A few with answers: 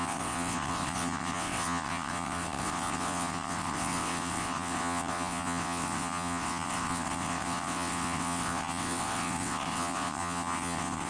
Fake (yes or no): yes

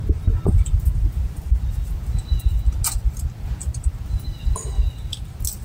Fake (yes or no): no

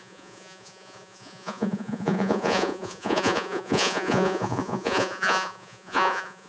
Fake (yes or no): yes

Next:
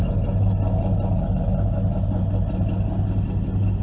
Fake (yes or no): no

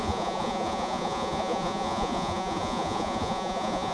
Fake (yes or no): yes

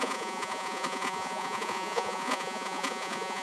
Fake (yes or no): yes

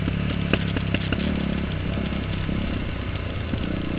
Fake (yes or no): no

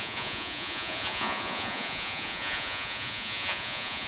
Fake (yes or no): yes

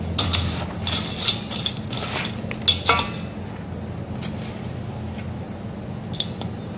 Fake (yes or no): no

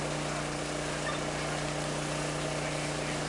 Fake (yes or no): no